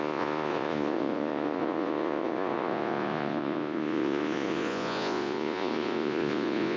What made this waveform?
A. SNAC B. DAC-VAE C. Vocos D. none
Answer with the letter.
C